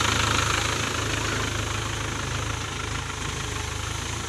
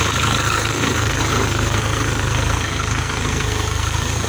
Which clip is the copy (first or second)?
second